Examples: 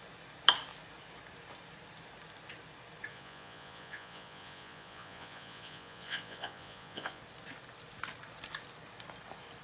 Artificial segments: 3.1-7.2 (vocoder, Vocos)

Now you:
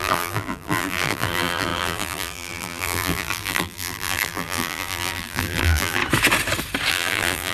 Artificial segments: 0.0-6.0 (vocoder, BigVGAN v2); 6.9-7.5

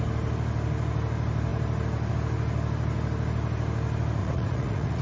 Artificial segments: 4.2-5.0 (vocoder, Vocos)

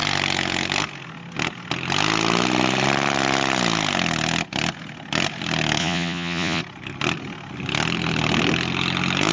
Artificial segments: 5.8-6.6 (vocoder, Vocos)

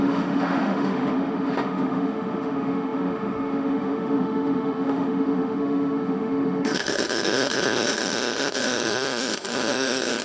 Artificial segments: 0.0-10.2 (autoencoder, DAC-VAE)

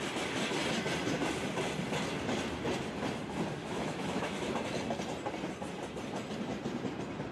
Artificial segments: 3.6-4.5 (autoencoder, DAC-VAE)